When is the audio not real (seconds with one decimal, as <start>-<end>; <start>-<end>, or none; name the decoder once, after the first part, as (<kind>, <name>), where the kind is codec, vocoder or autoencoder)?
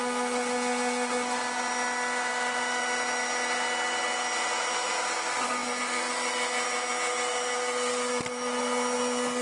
none